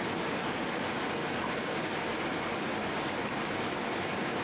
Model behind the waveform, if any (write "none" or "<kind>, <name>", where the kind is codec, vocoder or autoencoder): none